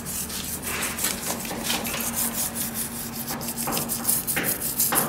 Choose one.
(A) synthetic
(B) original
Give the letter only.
B